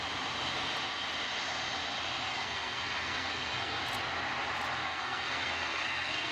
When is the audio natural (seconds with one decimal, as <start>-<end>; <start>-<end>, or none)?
0.0-2.3; 3.8-4.8

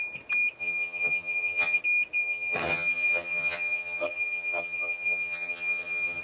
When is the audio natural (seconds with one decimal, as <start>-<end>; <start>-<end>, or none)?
0.0-0.6; 1.8-2.2

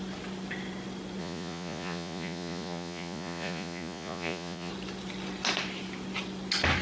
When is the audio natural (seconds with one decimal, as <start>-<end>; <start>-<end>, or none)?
0.0-1.2; 4.7-6.8

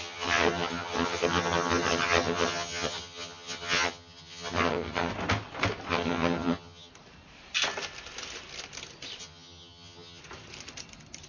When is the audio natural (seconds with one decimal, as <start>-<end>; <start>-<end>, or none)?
5.1-5.9; 6.9-9.2; 10.2-11.3

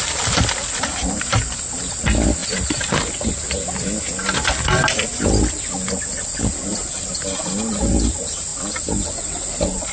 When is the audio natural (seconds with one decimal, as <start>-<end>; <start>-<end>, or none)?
0.0-9.9

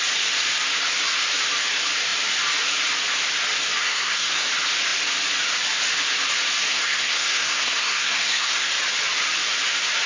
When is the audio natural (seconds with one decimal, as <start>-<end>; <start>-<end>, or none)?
0.0-3.8; 4.5-6.7; 8.7-10.1